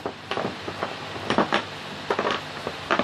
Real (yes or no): yes